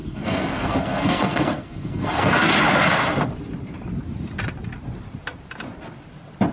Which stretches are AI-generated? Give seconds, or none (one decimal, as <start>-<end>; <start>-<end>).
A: 0.0-2.5